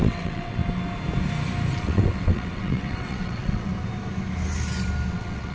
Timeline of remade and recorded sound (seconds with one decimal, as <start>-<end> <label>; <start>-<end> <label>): 0.0-0.6 remade; 0.6-1.7 recorded; 1.7-3.7 remade; 3.7-5.1 recorded; 5.1-5.5 remade